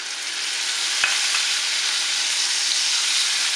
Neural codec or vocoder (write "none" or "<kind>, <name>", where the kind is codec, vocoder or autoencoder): none